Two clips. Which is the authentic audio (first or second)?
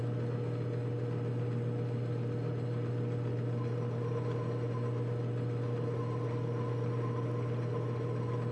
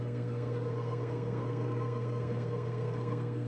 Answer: first